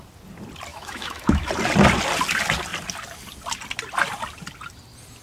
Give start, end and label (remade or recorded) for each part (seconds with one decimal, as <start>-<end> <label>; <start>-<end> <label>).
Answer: 0.0-0.7 recorded; 0.7-1.5 remade; 1.5-5.2 recorded